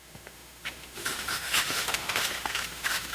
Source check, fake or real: fake